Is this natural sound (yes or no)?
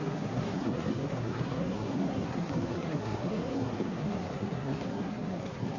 no